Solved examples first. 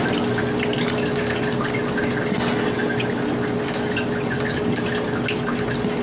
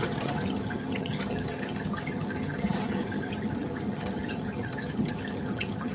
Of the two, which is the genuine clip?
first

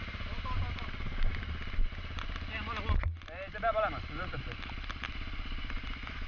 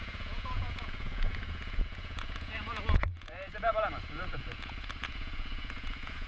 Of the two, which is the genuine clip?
first